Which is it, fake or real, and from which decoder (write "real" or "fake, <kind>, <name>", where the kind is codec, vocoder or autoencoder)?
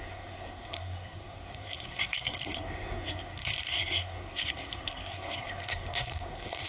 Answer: fake, codec, SNAC